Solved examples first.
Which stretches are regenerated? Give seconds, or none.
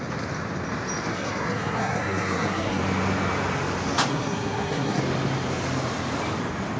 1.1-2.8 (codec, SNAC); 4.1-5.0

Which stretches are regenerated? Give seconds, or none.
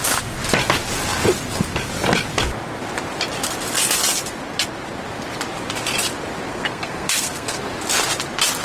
6.5-7.6 (codec, SNAC)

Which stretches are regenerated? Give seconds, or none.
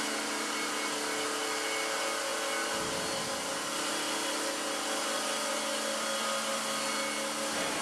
none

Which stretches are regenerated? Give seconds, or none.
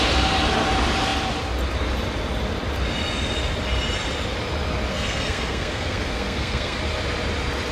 4.9-6.8 (codec, SNAC)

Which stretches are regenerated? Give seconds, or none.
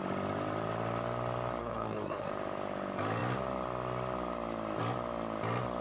1.6-2.3 (codec, SNAC)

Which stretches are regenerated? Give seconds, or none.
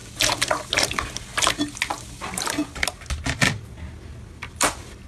none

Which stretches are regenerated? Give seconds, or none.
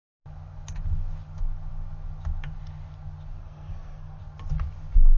3.4-4.2 (codec, SNAC)